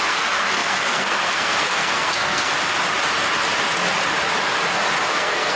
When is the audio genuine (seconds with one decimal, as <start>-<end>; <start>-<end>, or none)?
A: 2.5-5.1